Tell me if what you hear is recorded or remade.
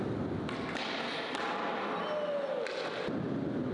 recorded